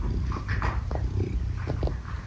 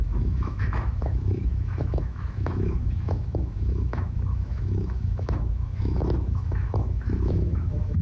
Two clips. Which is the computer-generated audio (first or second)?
second